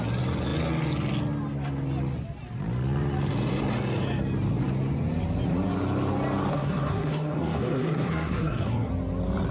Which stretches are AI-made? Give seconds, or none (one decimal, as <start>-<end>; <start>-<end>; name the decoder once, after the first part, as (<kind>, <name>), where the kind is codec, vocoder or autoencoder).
6.5-8.9 (codec, SNAC)